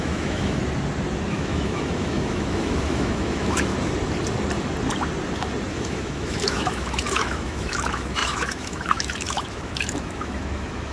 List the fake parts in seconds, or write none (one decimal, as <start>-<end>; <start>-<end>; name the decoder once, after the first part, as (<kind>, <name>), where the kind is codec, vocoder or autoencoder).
0.0-0.6 (autoencoder, DAC-VAE); 1.3-3.7; 5.7-10.9